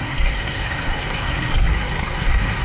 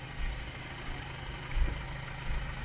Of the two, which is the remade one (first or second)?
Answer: first